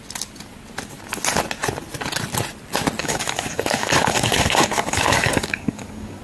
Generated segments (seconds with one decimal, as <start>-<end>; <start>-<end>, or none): 3.0-6.2